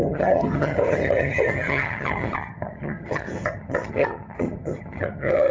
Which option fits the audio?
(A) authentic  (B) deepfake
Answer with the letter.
B